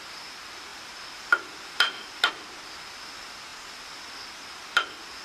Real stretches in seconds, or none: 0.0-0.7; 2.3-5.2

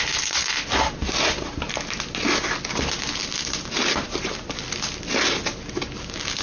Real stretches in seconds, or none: 0.0-1.0; 1.7-3.2; 4.6-6.4